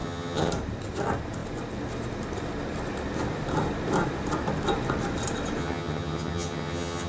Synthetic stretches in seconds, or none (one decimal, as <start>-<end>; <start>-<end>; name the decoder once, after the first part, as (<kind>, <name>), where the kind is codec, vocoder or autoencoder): 0.0-0.5 (vocoder, HiFi-GAN); 5.6-7.1